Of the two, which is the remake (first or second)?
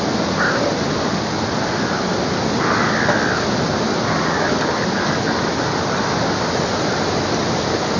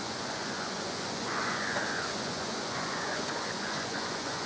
second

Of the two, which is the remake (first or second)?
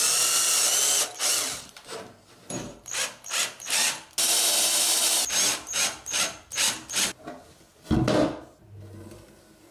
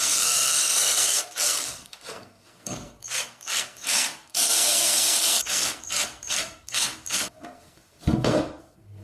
second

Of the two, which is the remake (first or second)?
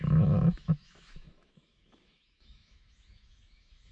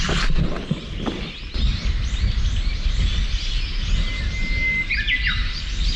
first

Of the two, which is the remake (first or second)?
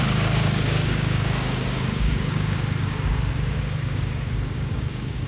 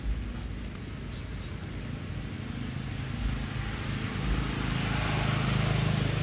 first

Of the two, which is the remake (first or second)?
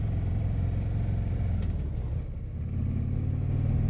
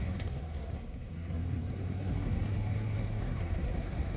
second